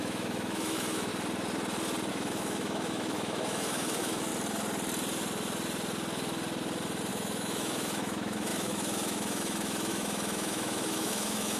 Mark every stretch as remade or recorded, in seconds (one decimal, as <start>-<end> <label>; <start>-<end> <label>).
0.0-1.1 remade; 1.1-2.1 recorded; 2.1-4.3 remade; 4.3-7.1 recorded; 7.1-11.6 remade